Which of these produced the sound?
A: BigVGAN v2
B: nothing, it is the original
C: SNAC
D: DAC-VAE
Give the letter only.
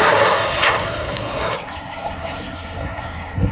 C